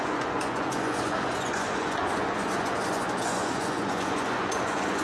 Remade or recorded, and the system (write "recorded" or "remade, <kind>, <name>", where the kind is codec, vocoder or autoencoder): remade, vocoder, Vocos